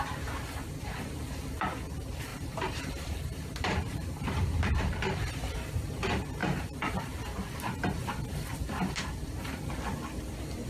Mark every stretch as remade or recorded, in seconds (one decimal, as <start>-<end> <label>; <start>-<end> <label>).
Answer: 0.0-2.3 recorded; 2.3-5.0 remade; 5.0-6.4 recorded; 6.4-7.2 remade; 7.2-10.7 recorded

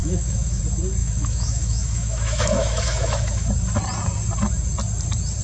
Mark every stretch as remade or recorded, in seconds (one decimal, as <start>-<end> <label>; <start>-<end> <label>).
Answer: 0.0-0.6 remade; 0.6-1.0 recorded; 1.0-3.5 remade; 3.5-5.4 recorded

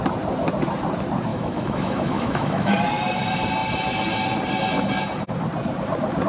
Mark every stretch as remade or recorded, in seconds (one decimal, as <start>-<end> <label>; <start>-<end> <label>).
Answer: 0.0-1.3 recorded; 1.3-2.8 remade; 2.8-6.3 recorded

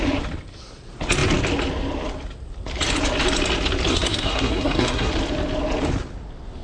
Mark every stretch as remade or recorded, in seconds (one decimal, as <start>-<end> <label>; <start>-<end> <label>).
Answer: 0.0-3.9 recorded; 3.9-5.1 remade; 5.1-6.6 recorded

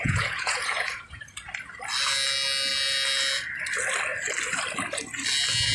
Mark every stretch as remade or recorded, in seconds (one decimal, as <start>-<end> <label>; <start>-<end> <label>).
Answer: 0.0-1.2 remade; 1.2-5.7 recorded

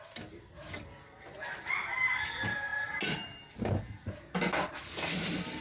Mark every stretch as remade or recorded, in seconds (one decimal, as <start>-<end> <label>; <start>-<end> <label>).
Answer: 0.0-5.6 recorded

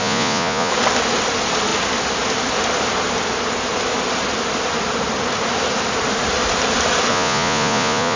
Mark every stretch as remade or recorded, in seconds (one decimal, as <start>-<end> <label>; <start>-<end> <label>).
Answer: 0.0-0.7 remade; 0.7-7.1 recorded; 7.1-8.2 remade

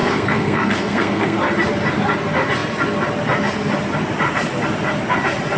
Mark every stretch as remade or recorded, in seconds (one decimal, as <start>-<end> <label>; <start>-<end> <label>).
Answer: 0.0-1.4 remade; 1.4-5.6 recorded